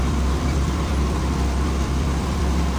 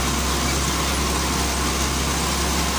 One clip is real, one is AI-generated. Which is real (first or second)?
second